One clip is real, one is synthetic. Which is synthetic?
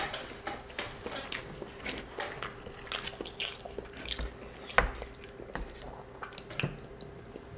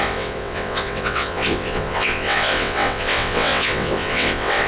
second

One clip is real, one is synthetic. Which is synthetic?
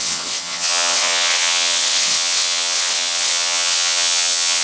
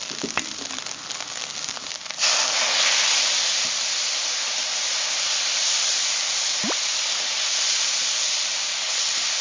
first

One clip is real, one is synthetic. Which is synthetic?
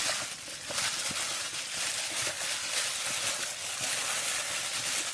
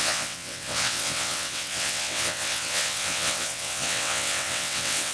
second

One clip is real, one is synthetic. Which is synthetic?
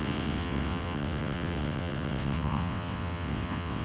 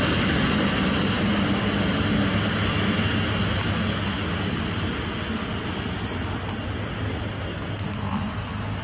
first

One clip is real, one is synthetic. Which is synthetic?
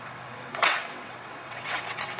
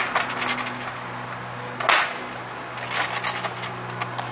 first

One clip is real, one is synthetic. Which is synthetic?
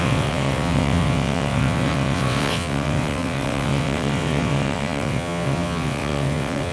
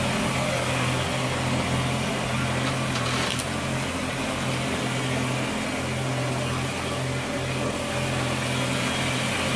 first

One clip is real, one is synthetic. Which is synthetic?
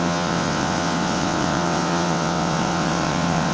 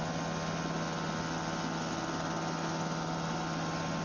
first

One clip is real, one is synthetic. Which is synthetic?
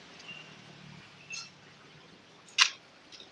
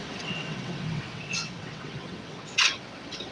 second